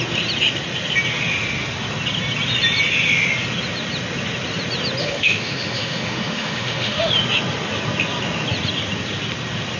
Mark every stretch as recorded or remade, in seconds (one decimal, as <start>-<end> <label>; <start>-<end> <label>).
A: 0.0-5.0 recorded; 5.0-7.1 remade; 7.1-9.8 recorded

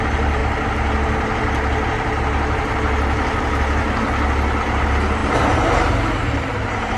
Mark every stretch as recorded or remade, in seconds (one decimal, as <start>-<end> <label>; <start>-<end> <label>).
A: 0.0-0.4 remade; 0.4-4.6 recorded; 4.6-7.0 remade

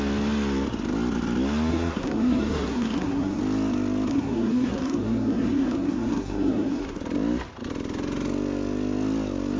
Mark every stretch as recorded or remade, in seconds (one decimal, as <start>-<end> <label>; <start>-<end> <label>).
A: 0.0-1.7 recorded; 1.7-3.4 remade; 3.4-4.1 recorded; 4.1-7.0 remade; 7.0-9.6 recorded

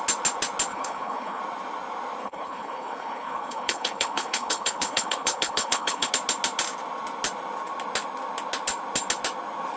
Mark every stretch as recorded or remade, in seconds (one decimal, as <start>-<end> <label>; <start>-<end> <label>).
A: 0.0-0.7 recorded; 0.7-1.4 remade; 1.4-2.2 recorded; 2.2-6.1 remade; 6.1-9.8 recorded

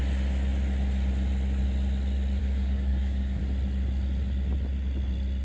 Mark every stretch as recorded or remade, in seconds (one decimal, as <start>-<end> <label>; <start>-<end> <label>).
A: 0.0-2.4 recorded; 2.4-3.4 remade; 3.4-5.4 recorded